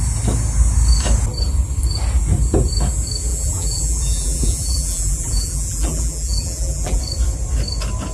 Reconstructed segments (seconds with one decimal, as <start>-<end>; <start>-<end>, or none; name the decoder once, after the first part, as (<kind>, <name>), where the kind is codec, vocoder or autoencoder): 3.3-7.0 (vocoder, BigVGAN v2)